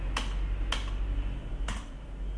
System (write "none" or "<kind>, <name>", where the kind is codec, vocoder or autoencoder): none